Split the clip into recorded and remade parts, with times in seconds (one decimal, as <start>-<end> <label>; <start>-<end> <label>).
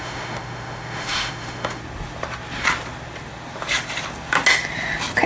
0.0-1.8 remade; 1.8-5.3 recorded